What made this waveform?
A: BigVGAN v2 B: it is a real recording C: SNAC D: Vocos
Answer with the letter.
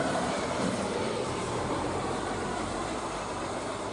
A